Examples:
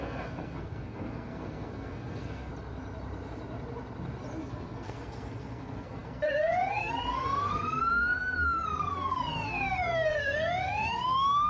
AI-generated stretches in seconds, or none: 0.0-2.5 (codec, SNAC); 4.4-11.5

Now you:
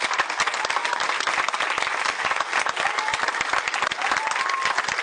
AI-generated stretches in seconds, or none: none

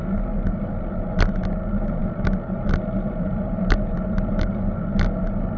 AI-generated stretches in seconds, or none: none